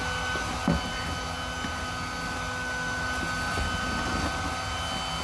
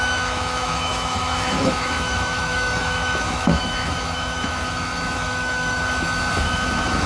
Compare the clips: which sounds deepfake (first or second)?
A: second